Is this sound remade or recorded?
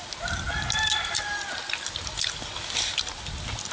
recorded